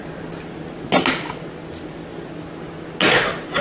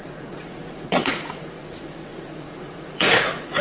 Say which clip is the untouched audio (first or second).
first